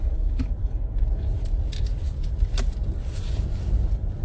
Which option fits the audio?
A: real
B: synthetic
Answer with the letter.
A